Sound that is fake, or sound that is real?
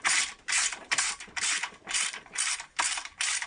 fake